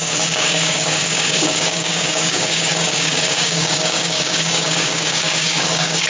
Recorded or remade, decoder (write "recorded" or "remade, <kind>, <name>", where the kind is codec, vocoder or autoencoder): remade, codec, DAC